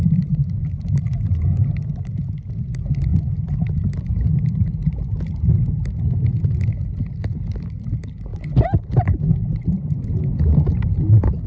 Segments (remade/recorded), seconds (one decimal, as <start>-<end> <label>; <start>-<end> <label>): 0.0-11.5 recorded